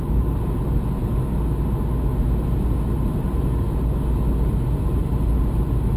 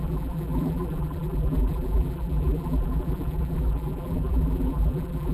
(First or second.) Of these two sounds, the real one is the first